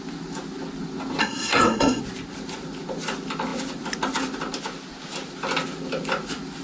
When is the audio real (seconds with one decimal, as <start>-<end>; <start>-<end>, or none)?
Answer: 0.0-1.2; 2.0-6.6